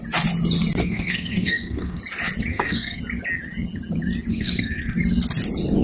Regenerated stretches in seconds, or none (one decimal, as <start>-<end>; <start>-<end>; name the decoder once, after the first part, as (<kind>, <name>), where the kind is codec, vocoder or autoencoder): 0.8-2.0 (codec, SNAC); 2.5-3.0; 4.3-5.0